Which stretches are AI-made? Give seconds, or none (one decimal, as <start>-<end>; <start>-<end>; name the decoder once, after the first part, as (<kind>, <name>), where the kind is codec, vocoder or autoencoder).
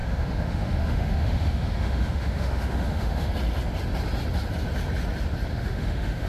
0.0-3.3 (autoencoder, DAC-VAE); 5.5-6.3